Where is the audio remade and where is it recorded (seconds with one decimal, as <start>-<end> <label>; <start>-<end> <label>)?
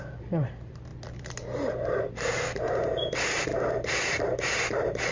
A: 0.0-0.9 remade; 0.9-1.9 recorded; 1.9-3.5 remade; 3.5-4.2 recorded; 4.2-5.1 remade